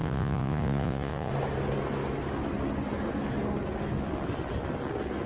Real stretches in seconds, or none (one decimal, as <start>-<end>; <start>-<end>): 1.3-5.3